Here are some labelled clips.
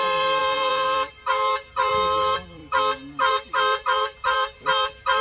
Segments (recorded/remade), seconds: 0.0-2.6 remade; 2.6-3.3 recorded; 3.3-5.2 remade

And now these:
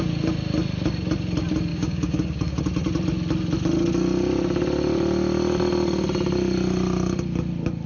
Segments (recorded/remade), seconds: 0.0-1.7 recorded; 1.7-2.6 remade; 2.6-7.9 recorded

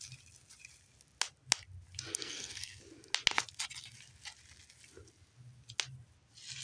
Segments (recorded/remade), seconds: 0.0-2.1 recorded; 2.1-2.8 remade; 2.8-6.6 recorded

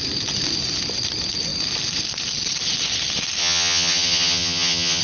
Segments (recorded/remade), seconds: 0.0-3.4 recorded; 3.4-5.0 remade

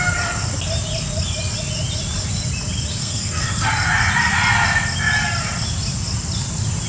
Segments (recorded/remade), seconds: 0.0-3.0 recorded; 3.0-3.7 remade; 3.7-6.9 recorded

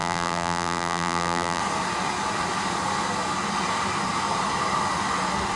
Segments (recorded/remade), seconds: 0.0-1.6 remade; 1.6-5.6 recorded

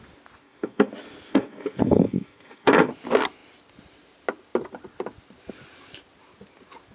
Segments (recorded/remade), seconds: 0.0-0.4 recorded; 0.4-0.9 remade; 0.9-1.3 recorded; 1.3-2.9 remade; 2.9-6.9 recorded

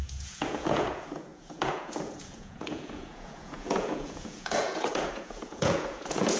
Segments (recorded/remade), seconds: 0.0-6.4 remade